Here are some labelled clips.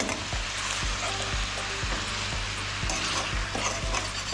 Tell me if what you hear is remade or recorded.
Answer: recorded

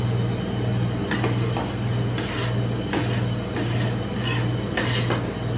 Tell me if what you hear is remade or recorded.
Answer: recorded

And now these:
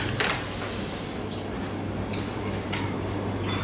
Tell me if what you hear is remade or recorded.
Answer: recorded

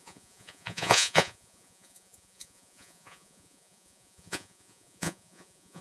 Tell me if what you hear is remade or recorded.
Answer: remade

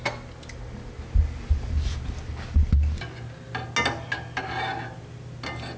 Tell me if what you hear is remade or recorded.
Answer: recorded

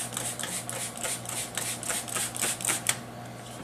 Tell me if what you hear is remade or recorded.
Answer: recorded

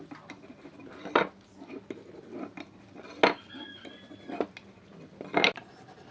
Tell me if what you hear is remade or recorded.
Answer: recorded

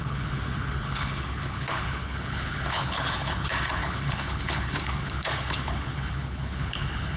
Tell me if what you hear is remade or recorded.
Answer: remade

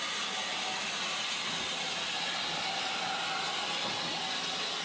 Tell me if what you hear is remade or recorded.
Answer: recorded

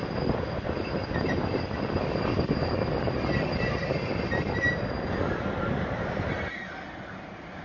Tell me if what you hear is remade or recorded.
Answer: recorded